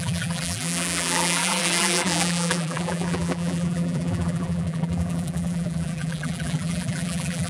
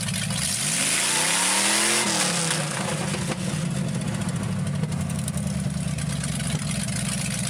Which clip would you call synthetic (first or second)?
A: first